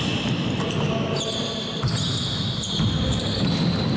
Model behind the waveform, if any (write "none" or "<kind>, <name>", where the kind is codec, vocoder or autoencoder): none